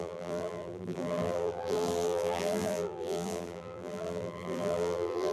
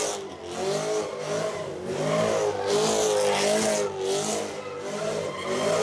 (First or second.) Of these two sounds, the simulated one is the first